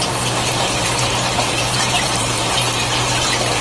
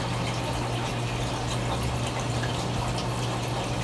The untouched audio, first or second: second